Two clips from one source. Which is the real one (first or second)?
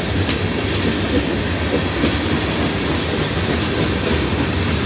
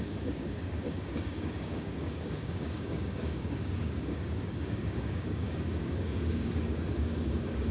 first